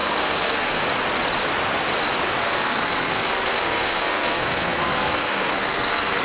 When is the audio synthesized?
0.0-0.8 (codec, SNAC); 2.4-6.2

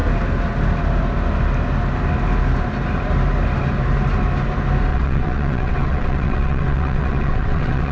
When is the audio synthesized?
4.9-7.9 (vocoder, WaveNeXt)

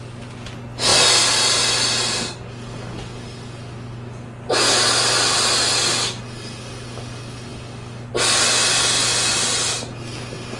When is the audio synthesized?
none

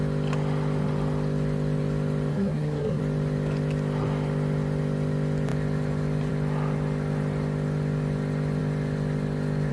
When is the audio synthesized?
2.3-3.0 (codec, SNAC)

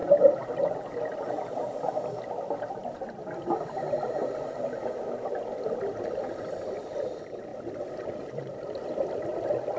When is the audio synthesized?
7.5-9.8 (vocoder, BigVGAN v2)

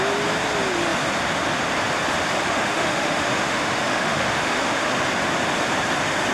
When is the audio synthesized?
2.5-4.9 (autoencoder, DAC-VAE)

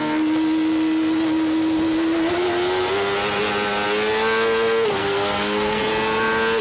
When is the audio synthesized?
5.0-5.8 (codec, SNAC)